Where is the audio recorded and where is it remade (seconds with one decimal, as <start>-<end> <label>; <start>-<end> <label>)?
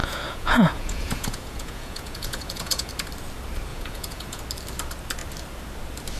0.0-2.9 remade; 2.9-3.7 recorded; 3.7-4.4 remade; 4.4-6.2 recorded